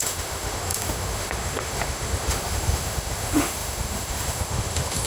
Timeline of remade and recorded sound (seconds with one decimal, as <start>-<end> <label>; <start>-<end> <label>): 0.0-5.1 remade